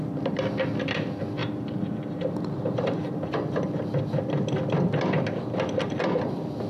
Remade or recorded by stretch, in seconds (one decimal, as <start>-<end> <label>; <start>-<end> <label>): 0.0-1.4 recorded; 1.4-3.5 remade; 3.5-6.7 recorded

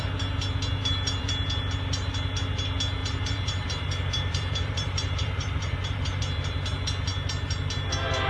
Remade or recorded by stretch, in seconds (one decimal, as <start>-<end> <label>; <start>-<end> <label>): 0.0-0.8 recorded; 0.8-1.3 remade; 1.3-3.0 recorded; 3.0-6.2 remade; 6.2-8.3 recorded